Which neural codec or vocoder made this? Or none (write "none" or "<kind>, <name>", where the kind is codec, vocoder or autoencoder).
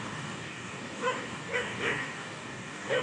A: codec, DAC